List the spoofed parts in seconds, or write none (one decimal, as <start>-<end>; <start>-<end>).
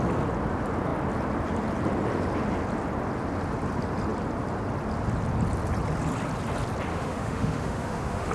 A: 6.9-8.3